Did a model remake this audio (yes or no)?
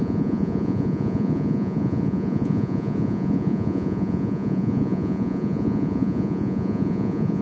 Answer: yes